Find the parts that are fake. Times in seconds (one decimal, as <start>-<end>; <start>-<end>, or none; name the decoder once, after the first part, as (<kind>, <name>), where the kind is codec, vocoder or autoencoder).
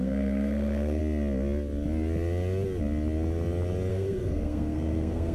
0.0-1.0 (codec, SNAC); 3.9-5.3